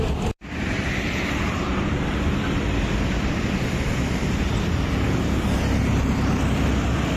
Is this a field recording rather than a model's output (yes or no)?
no